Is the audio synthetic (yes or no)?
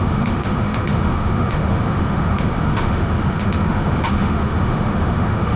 yes